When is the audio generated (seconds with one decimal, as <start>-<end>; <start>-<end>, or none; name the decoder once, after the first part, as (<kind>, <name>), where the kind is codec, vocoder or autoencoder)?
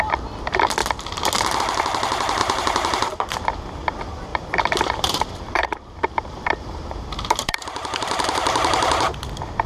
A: 2.4-3.4 (vocoder, BigVGAN v2); 4.3-9.1